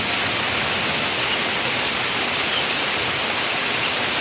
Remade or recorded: recorded